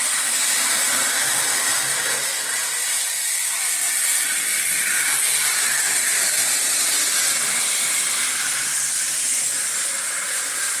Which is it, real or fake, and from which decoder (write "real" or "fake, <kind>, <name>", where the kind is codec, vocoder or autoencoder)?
real